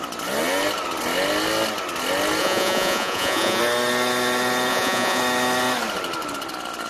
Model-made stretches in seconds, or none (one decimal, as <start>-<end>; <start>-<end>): 2.4-3.6; 4.7-5.2